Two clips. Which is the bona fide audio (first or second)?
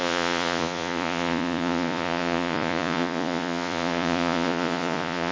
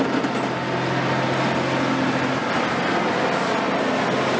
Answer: second